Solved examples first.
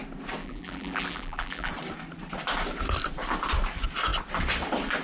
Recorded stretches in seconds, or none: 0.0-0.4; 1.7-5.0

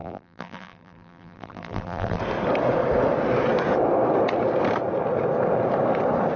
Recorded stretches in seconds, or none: 2.2-6.4

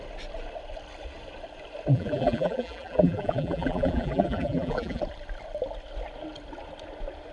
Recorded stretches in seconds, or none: 0.0-1.9; 5.0-7.3

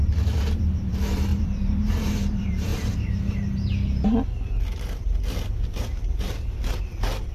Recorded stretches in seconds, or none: 2.7-6.2

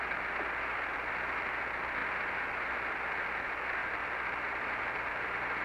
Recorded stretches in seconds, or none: 0.0-5.6